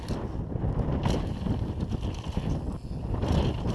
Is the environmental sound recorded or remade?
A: recorded